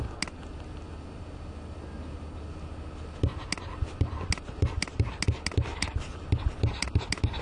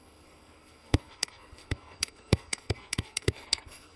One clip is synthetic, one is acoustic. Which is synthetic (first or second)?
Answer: second